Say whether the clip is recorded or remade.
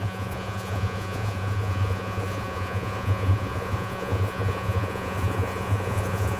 remade